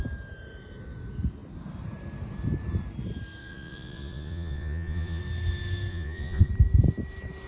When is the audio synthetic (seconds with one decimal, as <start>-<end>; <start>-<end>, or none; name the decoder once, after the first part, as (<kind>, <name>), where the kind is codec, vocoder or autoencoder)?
3.4-5.2 (vocoder, Vocos); 5.9-6.5